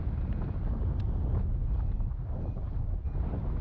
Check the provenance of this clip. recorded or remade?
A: recorded